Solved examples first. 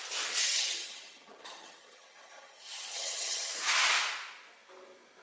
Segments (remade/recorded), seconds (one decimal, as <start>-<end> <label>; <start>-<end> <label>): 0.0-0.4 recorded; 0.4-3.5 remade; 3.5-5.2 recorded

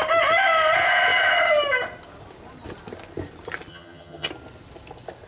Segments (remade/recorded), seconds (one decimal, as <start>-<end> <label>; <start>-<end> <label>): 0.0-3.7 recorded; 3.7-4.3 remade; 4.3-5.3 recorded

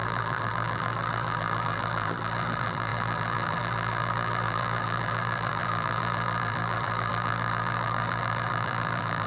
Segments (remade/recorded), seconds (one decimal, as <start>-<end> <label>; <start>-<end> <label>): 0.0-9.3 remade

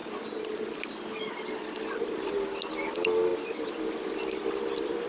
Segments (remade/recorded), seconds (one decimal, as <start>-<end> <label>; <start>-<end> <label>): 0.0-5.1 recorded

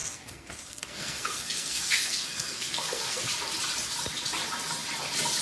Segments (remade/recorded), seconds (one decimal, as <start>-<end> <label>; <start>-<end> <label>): 0.0-3.2 remade; 3.2-5.4 recorded

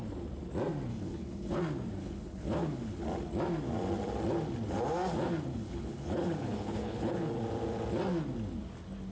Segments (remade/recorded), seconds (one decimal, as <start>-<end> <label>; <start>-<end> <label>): 0.0-0.9 recorded; 0.9-1.6 remade; 1.6-2.0 recorded; 2.0-3.0 remade; 3.0-5.5 recorded; 5.5-7.4 remade; 7.4-9.1 recorded

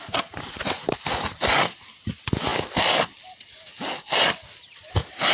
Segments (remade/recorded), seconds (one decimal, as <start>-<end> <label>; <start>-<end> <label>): 0.0-5.3 recorded

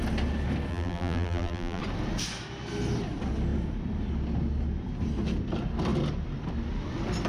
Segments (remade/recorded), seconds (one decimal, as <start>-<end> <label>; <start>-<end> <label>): 0.0-0.7 recorded; 0.7-1.8 remade; 1.8-7.3 recorded